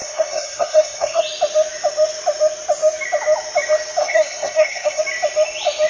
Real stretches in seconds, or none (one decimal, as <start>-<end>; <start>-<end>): 1.2-4.0; 5.0-5.9